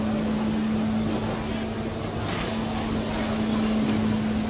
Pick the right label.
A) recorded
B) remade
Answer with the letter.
A